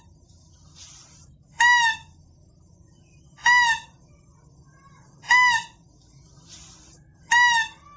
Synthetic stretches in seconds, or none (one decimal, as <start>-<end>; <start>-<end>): none